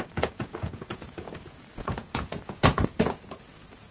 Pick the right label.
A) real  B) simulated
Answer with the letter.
B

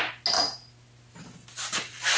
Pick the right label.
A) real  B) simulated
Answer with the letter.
A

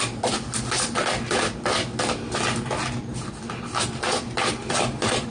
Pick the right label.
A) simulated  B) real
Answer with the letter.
B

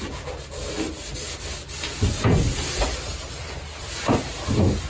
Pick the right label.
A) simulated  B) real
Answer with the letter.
B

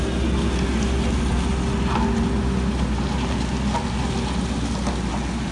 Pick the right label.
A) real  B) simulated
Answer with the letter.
A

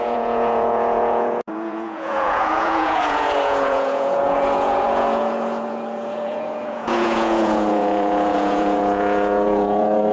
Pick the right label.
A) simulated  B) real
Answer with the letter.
A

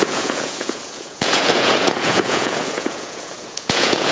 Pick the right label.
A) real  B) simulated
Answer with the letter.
B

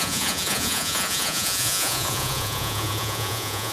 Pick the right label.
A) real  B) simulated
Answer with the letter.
B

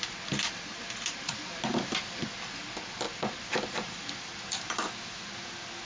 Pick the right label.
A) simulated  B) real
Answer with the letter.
B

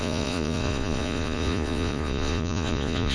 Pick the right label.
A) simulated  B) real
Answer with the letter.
A